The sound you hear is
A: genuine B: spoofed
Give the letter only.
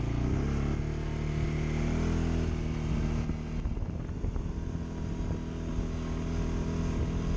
A